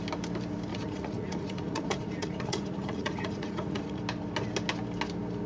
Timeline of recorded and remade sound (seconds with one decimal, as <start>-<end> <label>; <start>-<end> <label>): 0.0-0.7 recorded; 0.7-4.0 remade; 4.0-5.5 recorded